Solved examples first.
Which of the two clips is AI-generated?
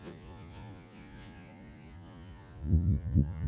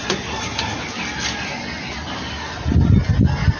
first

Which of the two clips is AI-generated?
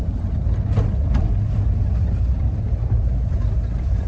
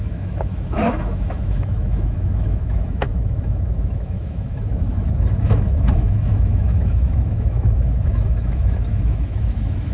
second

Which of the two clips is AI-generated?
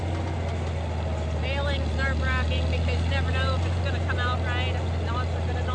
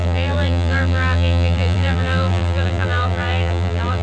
second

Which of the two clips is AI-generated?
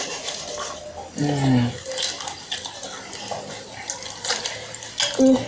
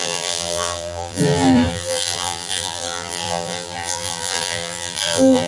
second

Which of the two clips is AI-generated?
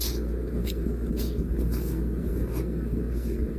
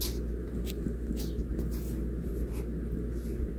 first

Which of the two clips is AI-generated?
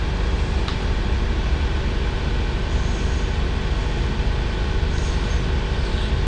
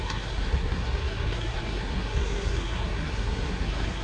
second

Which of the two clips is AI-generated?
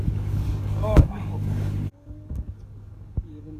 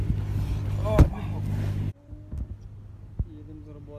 first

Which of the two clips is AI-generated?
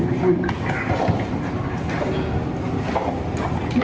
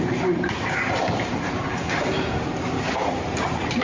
second